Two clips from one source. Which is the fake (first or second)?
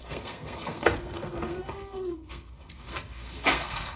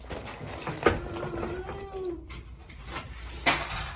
first